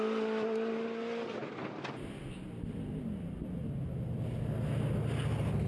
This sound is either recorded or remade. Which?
recorded